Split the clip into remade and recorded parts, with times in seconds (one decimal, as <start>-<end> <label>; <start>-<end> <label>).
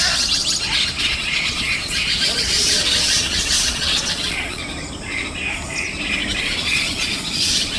0.0-0.4 remade; 0.4-1.0 recorded; 1.0-4.6 remade; 4.6-6.4 recorded; 6.4-7.8 remade